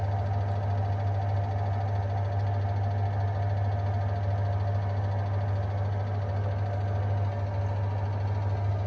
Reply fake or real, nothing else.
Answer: real